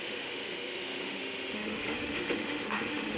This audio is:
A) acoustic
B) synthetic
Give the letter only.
B